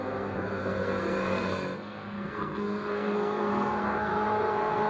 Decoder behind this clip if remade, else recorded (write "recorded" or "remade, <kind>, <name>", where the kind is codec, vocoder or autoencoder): remade, codec, SNAC